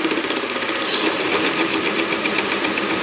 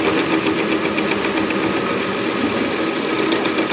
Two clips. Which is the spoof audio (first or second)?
first